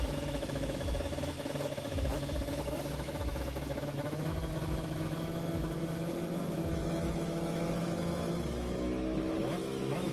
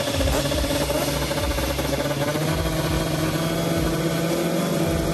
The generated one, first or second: first